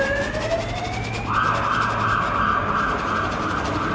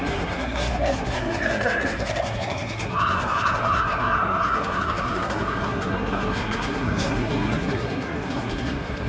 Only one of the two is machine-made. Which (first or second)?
second